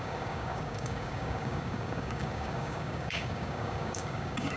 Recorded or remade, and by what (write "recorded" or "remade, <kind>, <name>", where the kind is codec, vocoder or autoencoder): remade, codec, DAC